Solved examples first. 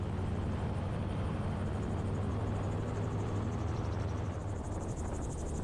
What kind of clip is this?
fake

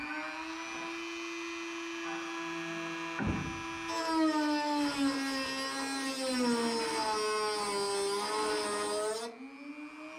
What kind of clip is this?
real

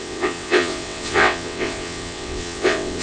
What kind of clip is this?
fake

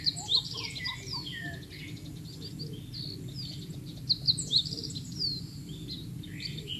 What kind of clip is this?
real